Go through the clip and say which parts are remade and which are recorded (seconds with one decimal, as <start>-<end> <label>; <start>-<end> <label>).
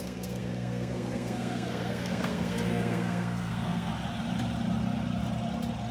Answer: 0.0-3.9 remade; 3.9-5.9 recorded